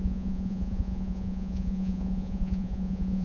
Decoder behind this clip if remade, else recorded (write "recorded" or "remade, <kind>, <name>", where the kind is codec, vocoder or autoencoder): remade, vocoder, Vocos